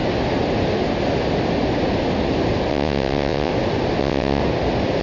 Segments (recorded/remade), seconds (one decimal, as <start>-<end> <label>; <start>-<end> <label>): 0.0-2.7 recorded; 2.7-3.5 remade; 3.5-4.0 recorded; 4.0-4.4 remade; 4.4-5.0 recorded